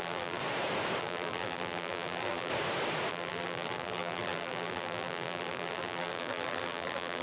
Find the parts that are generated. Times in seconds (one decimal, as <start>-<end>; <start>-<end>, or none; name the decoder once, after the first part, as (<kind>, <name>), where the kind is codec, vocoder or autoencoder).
0.0-0.4 (vocoder, BigVGAN v2); 1.0-2.5; 3.1-7.2